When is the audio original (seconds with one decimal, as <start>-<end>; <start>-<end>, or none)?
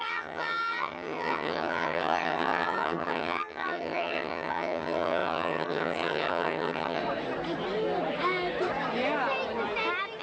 7.0-10.2